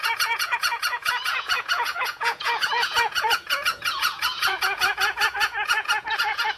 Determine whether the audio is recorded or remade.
remade